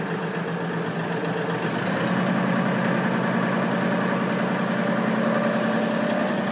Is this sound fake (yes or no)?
no